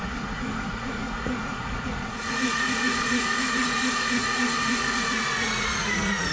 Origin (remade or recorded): remade